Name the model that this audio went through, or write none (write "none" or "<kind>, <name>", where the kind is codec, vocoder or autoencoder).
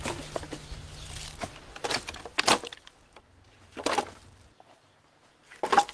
none